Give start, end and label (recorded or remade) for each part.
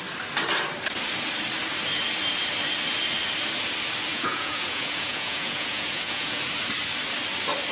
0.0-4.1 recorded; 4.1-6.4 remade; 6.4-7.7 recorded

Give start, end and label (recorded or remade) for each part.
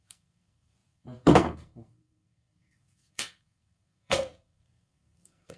0.0-5.6 remade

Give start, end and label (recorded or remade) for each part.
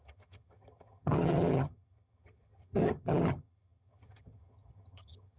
0.0-5.4 remade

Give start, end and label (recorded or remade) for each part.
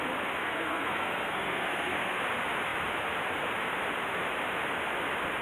0.0-0.4 recorded; 0.4-2.2 remade; 2.2-5.4 recorded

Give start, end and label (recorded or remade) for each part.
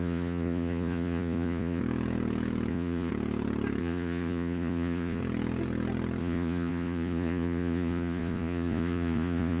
0.0-1.8 remade; 1.8-2.7 recorded; 2.7-3.1 remade; 3.1-3.8 recorded; 3.8-5.2 remade; 5.2-6.2 recorded; 6.2-9.6 remade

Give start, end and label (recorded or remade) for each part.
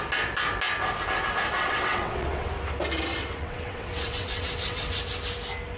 0.0-1.6 recorded; 1.6-2.5 remade; 2.5-3.2 recorded; 3.2-5.0 remade; 5.0-5.8 recorded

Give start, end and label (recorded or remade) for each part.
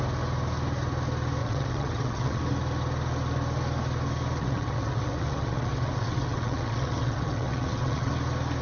0.0-1.4 recorded; 1.4-2.4 remade; 2.4-4.4 recorded; 4.4-8.1 remade; 8.1-8.6 recorded